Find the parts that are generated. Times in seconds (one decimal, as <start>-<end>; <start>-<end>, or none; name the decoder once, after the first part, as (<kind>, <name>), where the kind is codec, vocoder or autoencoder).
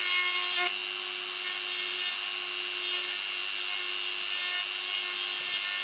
none